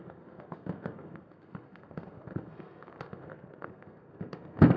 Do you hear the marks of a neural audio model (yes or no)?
yes